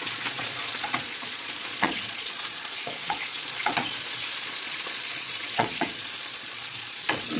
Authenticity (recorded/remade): remade